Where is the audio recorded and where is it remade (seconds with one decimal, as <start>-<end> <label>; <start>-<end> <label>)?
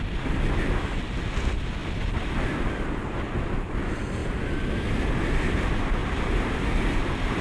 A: 0.0-7.4 recorded